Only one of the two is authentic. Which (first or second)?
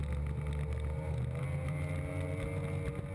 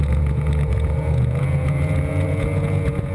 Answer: first